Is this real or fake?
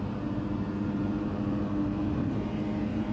fake